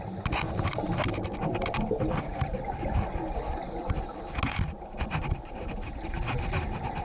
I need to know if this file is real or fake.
real